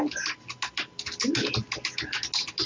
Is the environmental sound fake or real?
real